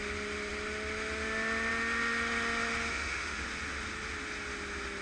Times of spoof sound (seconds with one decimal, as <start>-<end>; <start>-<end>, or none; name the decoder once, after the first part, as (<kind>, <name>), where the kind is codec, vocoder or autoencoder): 2.9-3.4 (autoencoder, DAC-VAE)